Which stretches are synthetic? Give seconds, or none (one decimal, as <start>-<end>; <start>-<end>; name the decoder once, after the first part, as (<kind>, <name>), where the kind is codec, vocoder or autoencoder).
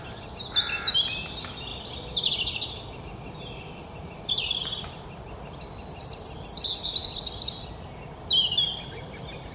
1.7-6.6 (vocoder, BigVGAN v2); 7.0-7.8